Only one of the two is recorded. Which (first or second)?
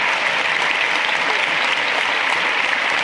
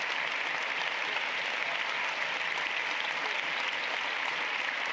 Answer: second